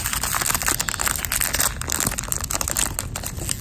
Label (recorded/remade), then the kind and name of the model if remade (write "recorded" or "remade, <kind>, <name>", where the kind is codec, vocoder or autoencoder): recorded